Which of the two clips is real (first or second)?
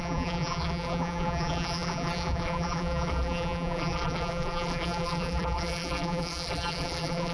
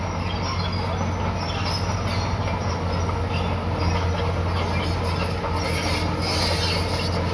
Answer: second